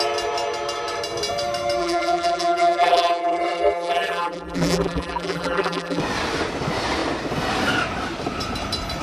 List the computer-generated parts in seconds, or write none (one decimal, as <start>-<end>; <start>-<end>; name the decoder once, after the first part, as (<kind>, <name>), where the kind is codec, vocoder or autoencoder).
1.8-6.0 (vocoder, BigVGAN v2)

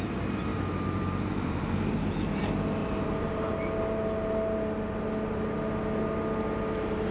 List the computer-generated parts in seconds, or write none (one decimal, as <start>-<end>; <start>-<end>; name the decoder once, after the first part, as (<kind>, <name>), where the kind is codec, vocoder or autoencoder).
2.8-3.5 (vocoder, BigVGAN v2)

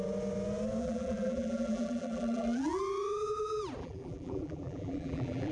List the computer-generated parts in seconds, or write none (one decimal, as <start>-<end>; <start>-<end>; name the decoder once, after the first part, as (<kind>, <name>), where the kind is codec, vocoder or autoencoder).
0.8-2.8 (vocoder, BigVGAN v2); 3.8-5.5

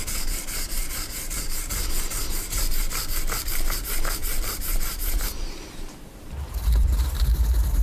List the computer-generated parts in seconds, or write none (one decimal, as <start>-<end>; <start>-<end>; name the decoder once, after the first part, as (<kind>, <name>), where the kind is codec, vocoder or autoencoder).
0.0-7.8 (vocoder, BigVGAN v2)

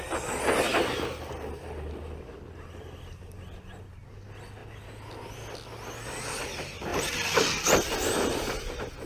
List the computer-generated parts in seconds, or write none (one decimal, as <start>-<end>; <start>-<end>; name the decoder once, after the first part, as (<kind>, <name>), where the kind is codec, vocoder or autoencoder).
none

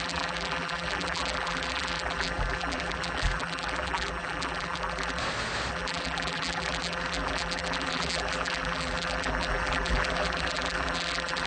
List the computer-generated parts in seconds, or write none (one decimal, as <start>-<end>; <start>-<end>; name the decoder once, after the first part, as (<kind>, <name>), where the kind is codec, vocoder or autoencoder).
0.0-5.2 (vocoder, BigVGAN v2); 5.7-11.5